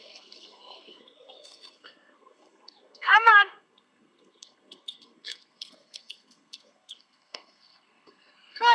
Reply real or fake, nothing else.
fake